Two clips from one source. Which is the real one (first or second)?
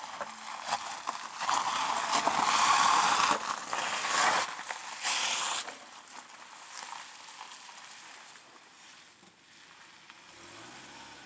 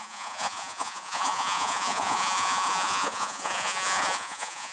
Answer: first